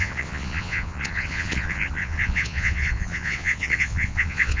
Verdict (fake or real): fake